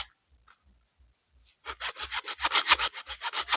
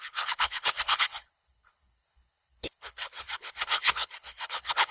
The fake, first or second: second